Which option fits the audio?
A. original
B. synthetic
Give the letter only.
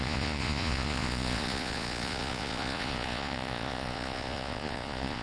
B